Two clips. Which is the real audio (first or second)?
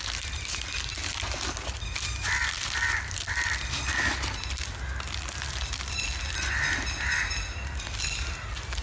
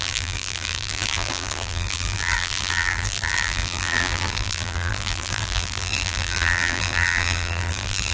first